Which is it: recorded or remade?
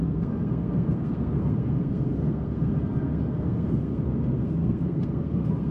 remade